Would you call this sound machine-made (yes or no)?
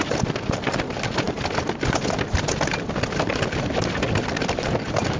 no